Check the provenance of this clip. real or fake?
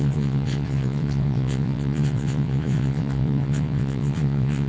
fake